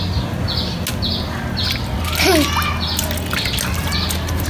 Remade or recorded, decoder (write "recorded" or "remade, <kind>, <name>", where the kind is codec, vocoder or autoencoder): recorded